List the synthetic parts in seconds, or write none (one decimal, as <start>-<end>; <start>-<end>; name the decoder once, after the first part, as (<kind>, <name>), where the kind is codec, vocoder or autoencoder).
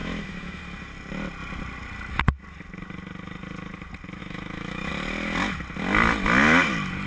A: 0.0-0.6 (autoencoder, DAC-VAE); 4.2-4.9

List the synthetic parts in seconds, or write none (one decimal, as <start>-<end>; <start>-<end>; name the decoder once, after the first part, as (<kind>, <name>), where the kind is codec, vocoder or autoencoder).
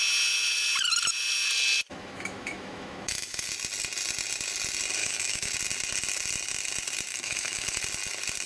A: 1.9-3.5 (autoencoder, DAC-VAE); 5.0-5.5; 7.1-7.8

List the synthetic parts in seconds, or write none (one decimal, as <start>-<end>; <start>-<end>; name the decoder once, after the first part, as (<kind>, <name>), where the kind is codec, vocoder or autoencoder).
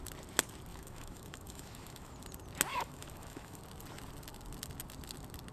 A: 0.7-2.1 (autoencoder, DAC-VAE); 2.7-3.6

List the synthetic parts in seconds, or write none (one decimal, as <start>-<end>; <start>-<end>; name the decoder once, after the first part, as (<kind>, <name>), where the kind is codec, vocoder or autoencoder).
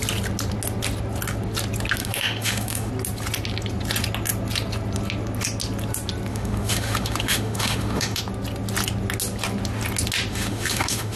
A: 2.0-2.9 (autoencoder, DAC-VAE); 6.3-8.2; 10.3-11.2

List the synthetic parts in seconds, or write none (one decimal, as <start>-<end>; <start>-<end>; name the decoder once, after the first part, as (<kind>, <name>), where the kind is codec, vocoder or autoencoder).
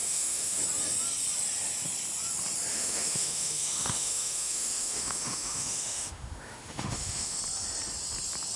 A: 0.0-0.6 (autoencoder, DAC-VAE); 2.7-7.4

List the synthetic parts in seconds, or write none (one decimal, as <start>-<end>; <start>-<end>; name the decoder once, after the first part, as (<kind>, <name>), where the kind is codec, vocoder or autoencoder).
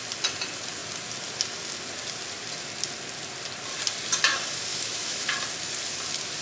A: 4.7-5.3 (autoencoder, DAC-VAE)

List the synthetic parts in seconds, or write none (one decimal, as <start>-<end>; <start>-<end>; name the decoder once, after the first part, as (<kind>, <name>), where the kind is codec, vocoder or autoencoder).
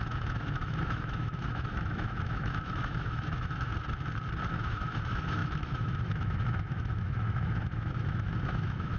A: 0.0-3.7 (autoencoder, DAC-VAE); 4.5-9.0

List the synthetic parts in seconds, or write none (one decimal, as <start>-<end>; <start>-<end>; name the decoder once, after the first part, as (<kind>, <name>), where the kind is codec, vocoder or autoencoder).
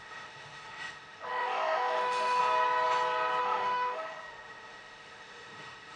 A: 0.0-2.4 (autoencoder, DAC-VAE); 3.4-6.0